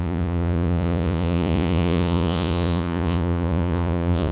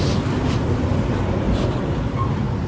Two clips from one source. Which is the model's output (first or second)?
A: first